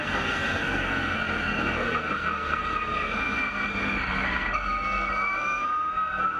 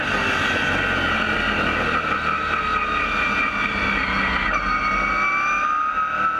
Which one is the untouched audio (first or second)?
second